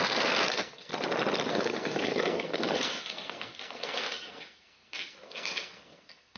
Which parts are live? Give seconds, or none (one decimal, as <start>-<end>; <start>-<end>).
0.9-1.5